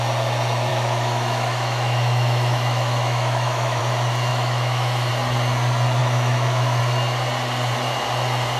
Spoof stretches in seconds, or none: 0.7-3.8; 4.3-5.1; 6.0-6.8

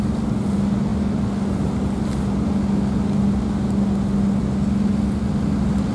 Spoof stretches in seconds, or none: none

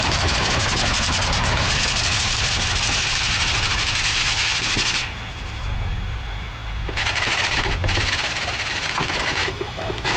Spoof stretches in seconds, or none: 9.4-10.2

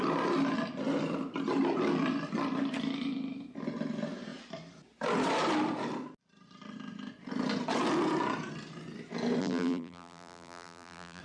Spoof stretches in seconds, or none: 9.4-11.2